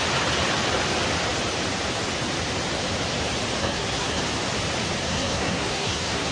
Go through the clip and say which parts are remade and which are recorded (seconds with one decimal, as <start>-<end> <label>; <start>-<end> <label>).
0.0-3.6 recorded; 3.6-4.2 remade; 4.2-5.0 recorded; 5.0-6.3 remade